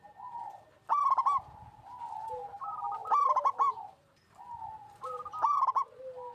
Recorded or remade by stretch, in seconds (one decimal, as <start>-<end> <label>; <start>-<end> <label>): 0.0-3.0 recorded; 3.0-4.3 remade; 4.3-6.3 recorded